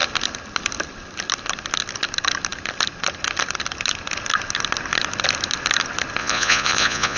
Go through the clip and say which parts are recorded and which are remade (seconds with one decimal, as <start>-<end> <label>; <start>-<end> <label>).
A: 0.0-6.2 recorded; 6.2-7.2 remade